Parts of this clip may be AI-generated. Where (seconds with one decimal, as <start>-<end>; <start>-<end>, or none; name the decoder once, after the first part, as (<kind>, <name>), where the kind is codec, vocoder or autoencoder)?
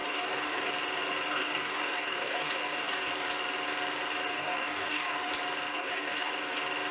0.0-0.7 (codec, DAC); 1.3-3.1; 4.3-5.3; 5.7-6.3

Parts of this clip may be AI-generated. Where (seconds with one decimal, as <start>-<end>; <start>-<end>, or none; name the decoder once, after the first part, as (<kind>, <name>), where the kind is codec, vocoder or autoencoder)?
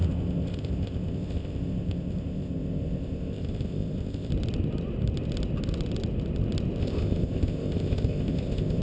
0.0-4.3 (codec, ZipCodec); 6.8-8.8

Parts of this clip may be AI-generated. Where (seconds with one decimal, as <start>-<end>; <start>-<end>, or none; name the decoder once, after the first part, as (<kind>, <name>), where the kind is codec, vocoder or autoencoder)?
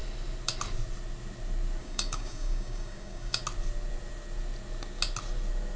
1.8-3.4 (codec, DAC)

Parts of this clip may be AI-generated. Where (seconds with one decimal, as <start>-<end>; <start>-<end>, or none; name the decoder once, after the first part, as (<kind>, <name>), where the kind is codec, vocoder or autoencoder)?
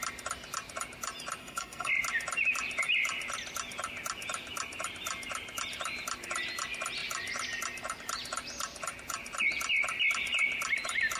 1.4-1.9 (codec, SNAC)